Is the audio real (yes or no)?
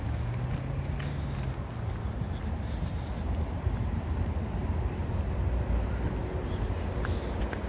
yes